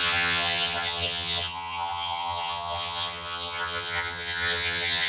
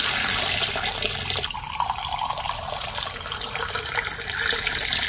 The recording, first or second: second